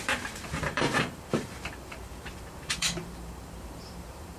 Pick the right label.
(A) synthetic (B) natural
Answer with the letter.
A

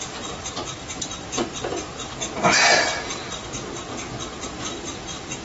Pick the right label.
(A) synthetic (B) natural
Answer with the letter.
B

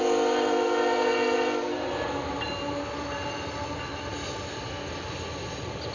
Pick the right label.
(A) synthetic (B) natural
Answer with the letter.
B